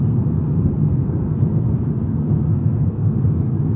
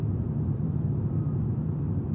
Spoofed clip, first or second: first